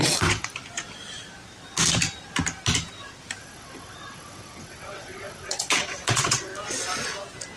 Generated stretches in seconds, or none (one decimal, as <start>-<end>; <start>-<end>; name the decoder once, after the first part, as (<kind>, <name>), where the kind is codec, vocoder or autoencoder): 0.0-0.5 (vocoder, WaveNeXt); 3.4-6.5